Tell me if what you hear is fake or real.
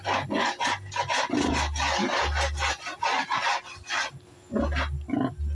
real